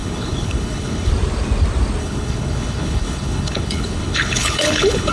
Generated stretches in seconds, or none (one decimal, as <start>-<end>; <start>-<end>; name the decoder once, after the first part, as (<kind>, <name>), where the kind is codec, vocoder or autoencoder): 0.0-1.1 (codec, HILCodec); 2.0-5.1